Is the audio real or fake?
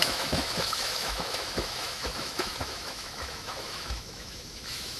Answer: fake